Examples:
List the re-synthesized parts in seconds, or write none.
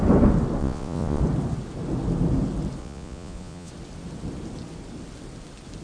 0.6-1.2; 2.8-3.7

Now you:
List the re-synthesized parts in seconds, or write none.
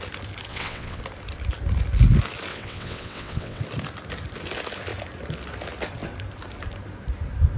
0.5-1.0; 2.5-3.6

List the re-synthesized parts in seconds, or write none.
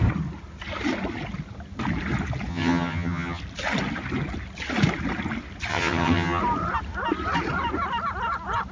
2.5-3.4; 5.7-6.4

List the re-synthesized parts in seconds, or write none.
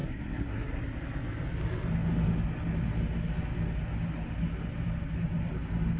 0.0-0.8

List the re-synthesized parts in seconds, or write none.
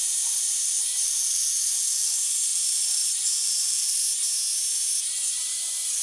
0.0-4.0; 5.3-6.0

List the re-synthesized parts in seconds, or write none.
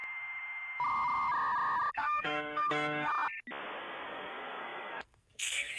1.9-3.1; 3.8-5.8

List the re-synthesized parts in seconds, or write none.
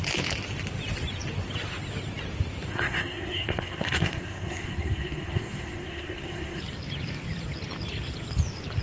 2.7-6.6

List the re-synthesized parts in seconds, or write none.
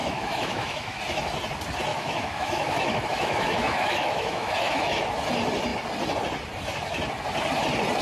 0.0-1.0; 1.9-5.0